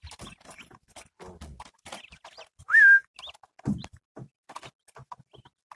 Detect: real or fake real